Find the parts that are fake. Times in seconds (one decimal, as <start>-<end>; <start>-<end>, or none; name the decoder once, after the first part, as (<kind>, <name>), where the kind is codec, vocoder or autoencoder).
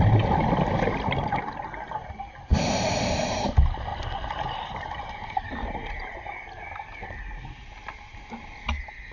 none